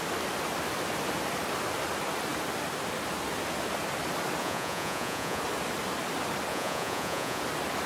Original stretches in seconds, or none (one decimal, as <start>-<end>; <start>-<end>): 0.0-4.4; 5.4-6.5; 7.4-7.9